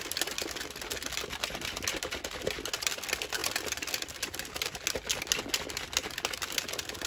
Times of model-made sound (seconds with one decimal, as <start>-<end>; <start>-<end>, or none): none

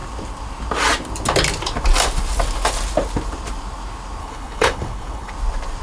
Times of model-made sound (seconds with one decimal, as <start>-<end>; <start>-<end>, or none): 4.2-5.3

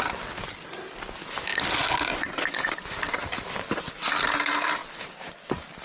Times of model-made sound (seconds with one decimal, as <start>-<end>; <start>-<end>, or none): none

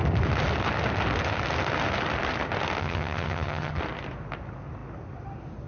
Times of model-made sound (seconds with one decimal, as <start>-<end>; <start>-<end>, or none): 2.8-3.8

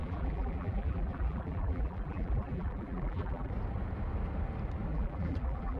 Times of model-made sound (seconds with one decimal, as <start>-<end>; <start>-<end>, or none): 0.0-3.5; 4.9-5.8

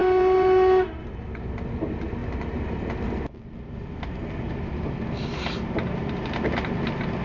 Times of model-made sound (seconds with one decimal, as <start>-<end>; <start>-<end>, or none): 0.0-1.5; 2.2-2.9

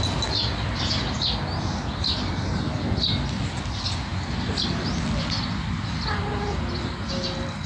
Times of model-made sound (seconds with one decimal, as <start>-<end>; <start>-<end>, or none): none

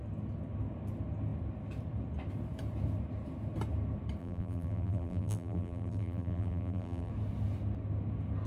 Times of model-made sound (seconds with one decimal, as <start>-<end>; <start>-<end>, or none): 4.2-7.1